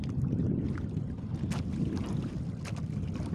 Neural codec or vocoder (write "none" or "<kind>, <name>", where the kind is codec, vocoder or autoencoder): none